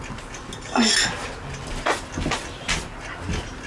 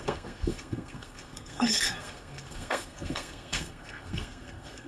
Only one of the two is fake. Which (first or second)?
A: second